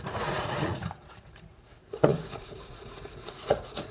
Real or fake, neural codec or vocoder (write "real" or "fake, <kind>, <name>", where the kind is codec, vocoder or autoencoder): fake, vocoder, Vocos